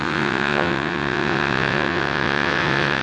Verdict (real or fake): fake